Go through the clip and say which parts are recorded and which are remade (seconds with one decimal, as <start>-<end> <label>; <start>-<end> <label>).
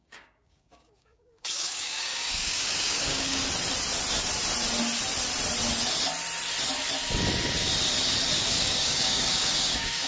0.0-3.4 remade; 3.4-8.5 recorded; 8.5-10.1 remade